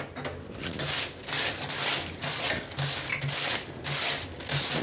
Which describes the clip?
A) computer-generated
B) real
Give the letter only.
B